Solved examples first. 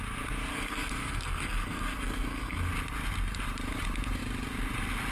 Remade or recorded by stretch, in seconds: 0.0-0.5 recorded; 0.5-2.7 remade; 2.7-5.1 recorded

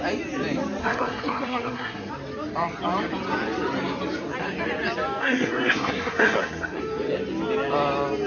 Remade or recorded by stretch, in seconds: 0.0-0.8 recorded; 0.8-2.1 remade; 2.1-5.2 recorded; 5.2-6.8 remade; 6.8-8.3 recorded